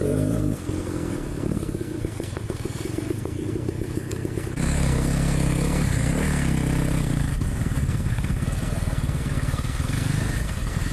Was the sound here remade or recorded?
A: remade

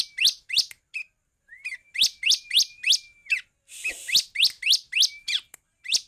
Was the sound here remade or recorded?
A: recorded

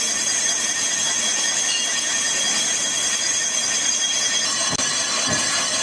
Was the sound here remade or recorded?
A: recorded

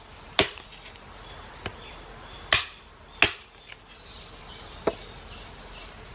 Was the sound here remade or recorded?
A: recorded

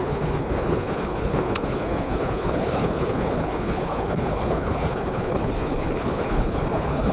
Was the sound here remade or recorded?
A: remade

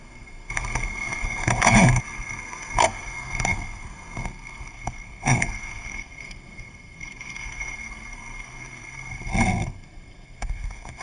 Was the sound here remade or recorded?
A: remade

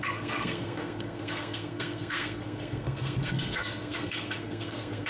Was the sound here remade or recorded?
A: remade